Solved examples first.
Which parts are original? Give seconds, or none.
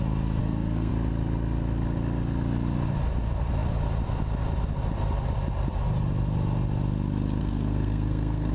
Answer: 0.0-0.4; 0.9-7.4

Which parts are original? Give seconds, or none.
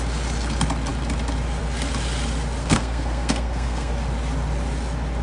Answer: 0.0-2.6; 3.9-5.2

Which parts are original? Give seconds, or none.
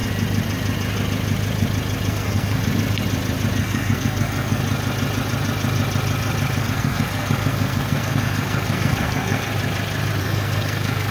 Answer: 0.0-2.1; 2.6-3.6; 4.6-6.6; 9.5-10.2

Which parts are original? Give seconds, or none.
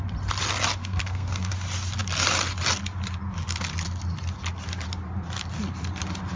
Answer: 0.0-0.8; 1.5-6.4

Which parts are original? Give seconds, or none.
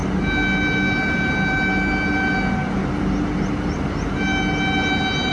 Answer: 0.0-5.3